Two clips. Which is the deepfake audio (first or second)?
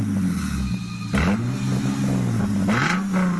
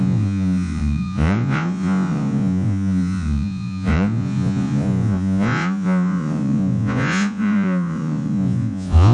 second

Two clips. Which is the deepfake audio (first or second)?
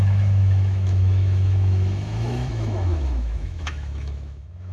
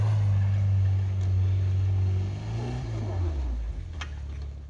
first